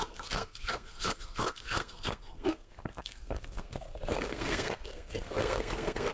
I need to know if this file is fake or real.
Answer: fake